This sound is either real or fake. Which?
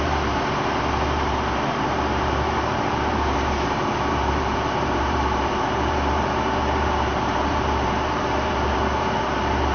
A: fake